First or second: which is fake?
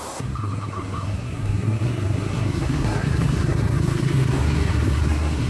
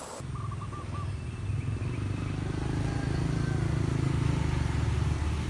first